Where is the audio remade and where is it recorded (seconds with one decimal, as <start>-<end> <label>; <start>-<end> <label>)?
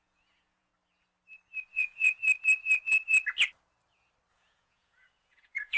0.0-0.7 remade; 0.7-1.7 recorded; 1.7-2.2 remade; 2.2-4.3 recorded; 4.3-5.8 remade